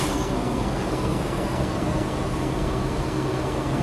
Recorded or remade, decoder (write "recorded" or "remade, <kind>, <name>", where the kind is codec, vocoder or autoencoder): remade, codec, SNAC